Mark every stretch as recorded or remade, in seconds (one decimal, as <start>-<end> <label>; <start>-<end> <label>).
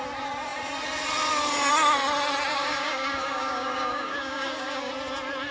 0.0-2.5 recorded; 2.5-4.9 remade; 4.9-5.5 recorded